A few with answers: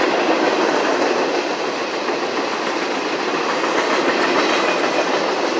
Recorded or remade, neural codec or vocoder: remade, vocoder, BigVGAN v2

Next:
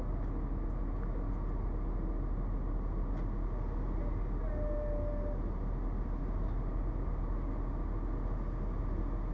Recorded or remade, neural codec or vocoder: recorded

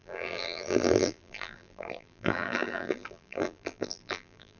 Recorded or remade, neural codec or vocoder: remade, vocoder, BigVGAN v2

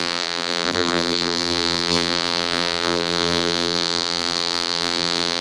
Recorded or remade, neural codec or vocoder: remade, vocoder, BigVGAN v2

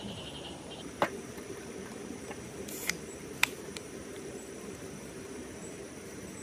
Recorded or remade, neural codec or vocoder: remade, vocoder, BigVGAN v2